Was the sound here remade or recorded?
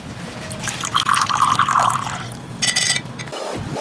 recorded